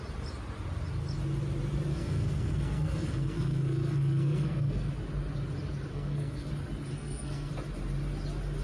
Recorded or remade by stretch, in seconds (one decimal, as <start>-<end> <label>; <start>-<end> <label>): 0.0-1.9 recorded; 1.9-4.9 remade; 4.9-5.9 recorded; 5.9-6.5 remade; 6.5-6.9 recorded; 6.9-7.5 remade; 7.5-8.6 recorded